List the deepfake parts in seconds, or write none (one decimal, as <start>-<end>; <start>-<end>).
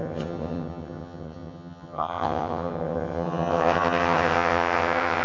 0.0-5.2